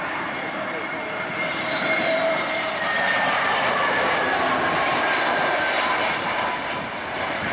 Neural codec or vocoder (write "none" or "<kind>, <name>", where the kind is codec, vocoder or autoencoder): vocoder, BigVGAN v2